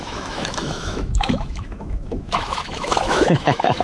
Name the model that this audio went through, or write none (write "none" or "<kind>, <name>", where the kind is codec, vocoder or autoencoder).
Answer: autoencoder, DAC-VAE